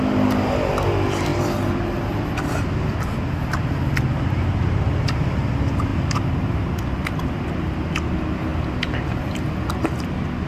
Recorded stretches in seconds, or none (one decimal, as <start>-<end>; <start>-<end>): 0.0-10.5